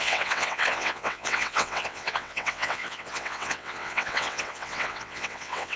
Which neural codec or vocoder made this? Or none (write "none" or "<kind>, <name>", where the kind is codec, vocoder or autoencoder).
vocoder, WaveNeXt